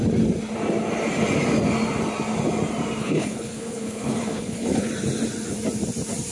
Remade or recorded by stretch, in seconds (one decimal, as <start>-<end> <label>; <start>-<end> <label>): 0.0-3.0 recorded; 3.0-4.9 remade; 4.9-6.3 recorded